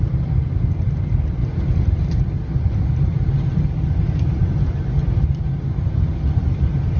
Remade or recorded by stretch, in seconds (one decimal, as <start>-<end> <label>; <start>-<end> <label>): 0.0-7.0 recorded